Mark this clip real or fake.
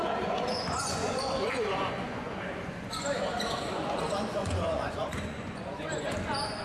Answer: fake